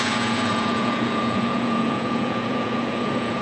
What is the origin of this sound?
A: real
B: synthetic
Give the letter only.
B